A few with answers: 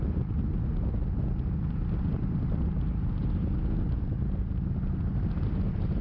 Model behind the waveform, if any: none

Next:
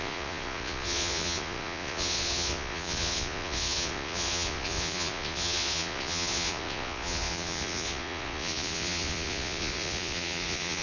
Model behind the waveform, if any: vocoder, Vocos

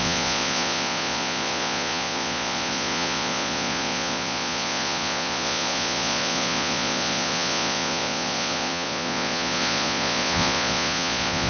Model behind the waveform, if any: vocoder, Vocos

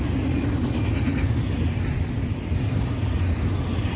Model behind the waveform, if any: none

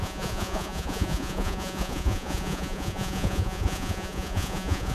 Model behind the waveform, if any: vocoder, Vocos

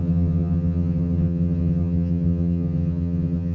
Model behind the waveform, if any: vocoder, HiFi-GAN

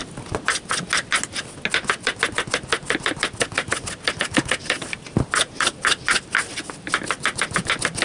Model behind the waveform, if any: none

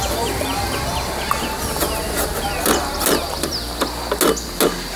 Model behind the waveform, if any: none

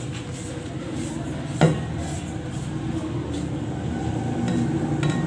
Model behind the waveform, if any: none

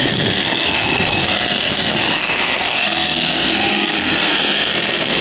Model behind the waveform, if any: codec, SNAC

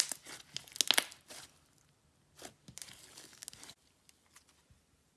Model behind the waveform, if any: none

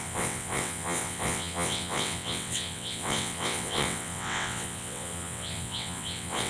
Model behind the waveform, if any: vocoder, WaveNeXt